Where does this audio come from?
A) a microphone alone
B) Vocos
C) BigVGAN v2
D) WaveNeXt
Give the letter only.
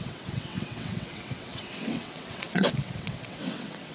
D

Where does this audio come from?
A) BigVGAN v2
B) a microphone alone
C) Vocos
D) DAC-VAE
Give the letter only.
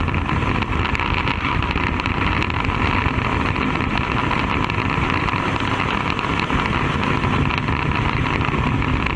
B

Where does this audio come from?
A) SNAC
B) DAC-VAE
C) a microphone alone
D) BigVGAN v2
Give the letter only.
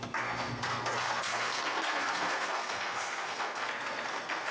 A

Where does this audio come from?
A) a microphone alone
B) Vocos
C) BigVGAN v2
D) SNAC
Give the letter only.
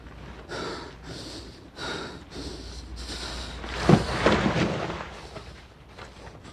A